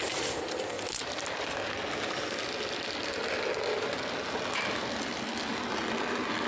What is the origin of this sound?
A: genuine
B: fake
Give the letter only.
A